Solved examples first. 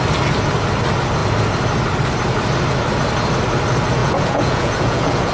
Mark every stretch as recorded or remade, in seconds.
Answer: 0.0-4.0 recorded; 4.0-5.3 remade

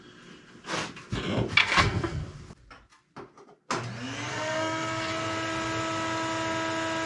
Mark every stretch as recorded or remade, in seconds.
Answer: 0.0-1.6 recorded; 1.6-2.2 remade; 2.2-4.3 recorded; 4.3-5.1 remade; 5.1-7.1 recorded

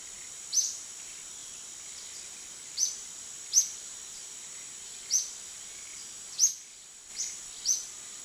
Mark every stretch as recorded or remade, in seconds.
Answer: 0.0-1.4 recorded; 1.4-4.6 remade; 4.6-8.2 recorded

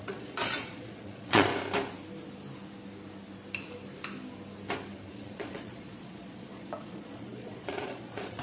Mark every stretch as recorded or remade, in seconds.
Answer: 0.0-1.5 remade; 1.5-5.1 recorded; 5.1-8.4 remade